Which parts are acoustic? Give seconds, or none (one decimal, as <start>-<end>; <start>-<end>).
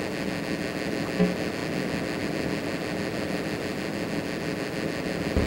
0.0-5.5